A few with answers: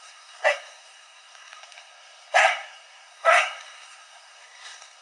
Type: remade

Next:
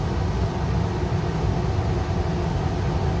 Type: recorded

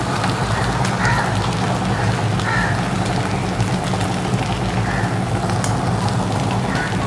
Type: recorded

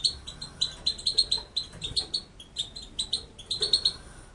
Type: recorded